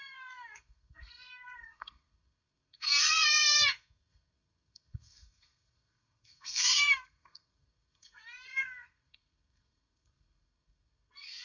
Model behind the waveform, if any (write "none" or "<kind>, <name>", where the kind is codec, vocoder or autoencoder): codec, SNAC